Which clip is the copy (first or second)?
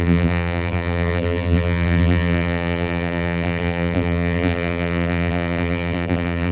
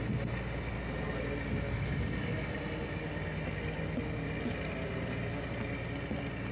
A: first